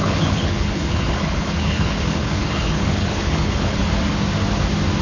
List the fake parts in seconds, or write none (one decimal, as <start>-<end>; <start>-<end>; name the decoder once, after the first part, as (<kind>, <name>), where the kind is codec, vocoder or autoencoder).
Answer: 0.0-3.8 (codec, HILCodec)